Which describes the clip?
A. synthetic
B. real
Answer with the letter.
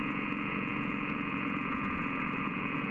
A